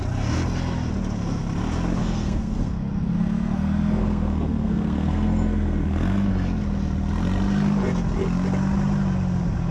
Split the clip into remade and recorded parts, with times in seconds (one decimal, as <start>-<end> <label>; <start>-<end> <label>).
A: 0.0-2.0 recorded; 2.0-6.3 remade; 6.3-9.7 recorded